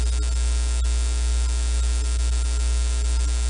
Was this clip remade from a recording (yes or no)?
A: no